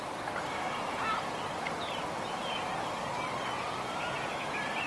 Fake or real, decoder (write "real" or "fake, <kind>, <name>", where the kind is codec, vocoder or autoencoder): real